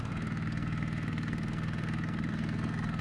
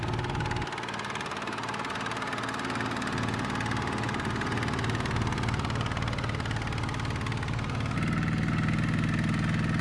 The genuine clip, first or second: second